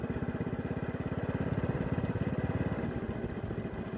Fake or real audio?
real